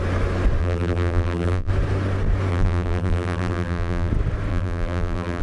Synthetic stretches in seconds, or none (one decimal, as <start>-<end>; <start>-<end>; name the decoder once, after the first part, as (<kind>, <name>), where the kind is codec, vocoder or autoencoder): 0.6-1.7 (vocoder, BigVGAN v2); 2.5-4.1; 4.5-5.4